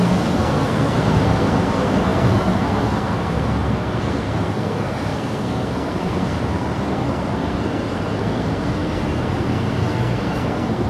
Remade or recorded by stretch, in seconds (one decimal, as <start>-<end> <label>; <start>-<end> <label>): 0.0-10.9 remade